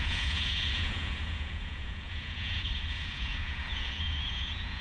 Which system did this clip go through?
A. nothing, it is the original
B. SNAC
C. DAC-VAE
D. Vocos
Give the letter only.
D